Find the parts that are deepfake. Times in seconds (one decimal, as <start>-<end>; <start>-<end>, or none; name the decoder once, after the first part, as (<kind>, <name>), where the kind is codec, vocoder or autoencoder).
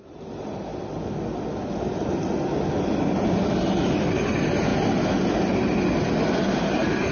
0.0-0.7 (vocoder, BigVGAN v2); 3.9-4.7; 6.3-7.1